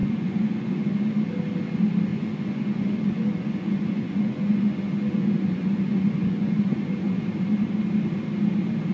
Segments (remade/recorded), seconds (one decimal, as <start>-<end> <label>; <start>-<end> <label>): 0.0-1.1 remade; 1.1-2.1 recorded; 2.1-7.2 remade; 7.2-8.9 recorded